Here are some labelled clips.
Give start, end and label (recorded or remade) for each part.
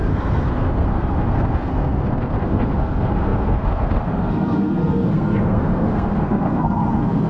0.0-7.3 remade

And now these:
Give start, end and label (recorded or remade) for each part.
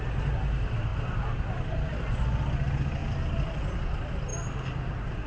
0.0-5.3 recorded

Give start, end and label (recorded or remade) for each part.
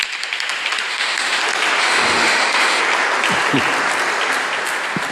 0.0-0.9 recorded; 0.9-1.4 remade; 1.4-1.8 recorded; 1.8-2.8 remade; 2.8-5.1 recorded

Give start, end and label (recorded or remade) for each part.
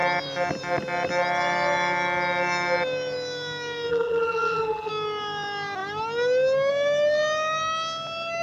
0.0-3.9 recorded; 3.9-4.9 remade; 4.9-8.4 recorded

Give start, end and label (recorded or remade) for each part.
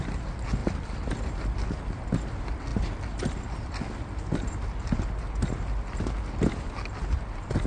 0.0-7.7 recorded